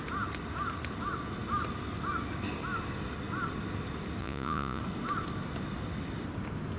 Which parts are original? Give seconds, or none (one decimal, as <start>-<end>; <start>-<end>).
0.0-4.2; 4.8-6.8